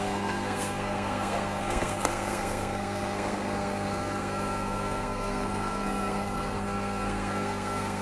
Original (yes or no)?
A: no